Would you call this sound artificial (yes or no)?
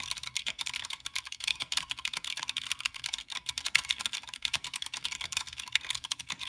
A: yes